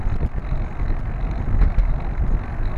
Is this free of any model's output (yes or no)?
yes